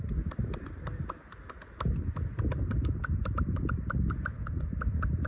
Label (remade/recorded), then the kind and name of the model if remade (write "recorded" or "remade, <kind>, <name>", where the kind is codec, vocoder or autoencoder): recorded